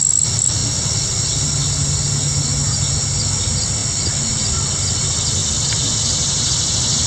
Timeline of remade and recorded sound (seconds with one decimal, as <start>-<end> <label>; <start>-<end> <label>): 0.0-7.1 recorded